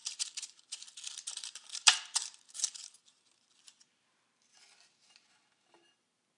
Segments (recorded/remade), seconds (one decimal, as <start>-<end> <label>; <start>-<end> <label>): 0.0-3.5 remade; 3.5-6.4 recorded